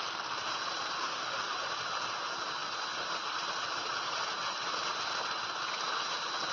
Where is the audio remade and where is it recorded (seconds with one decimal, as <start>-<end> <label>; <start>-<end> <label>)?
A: 0.0-1.0 recorded; 1.0-1.6 remade; 1.6-6.5 recorded